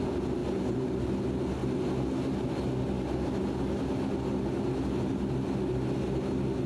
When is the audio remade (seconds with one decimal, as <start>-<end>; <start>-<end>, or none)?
none